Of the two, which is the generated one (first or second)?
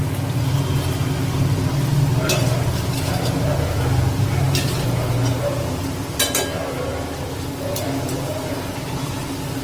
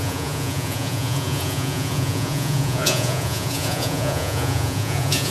second